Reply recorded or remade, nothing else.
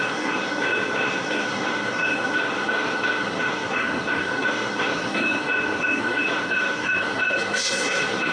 remade